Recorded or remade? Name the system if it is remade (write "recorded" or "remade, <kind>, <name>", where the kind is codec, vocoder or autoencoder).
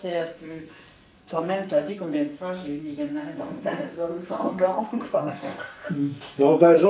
remade, codec, SNAC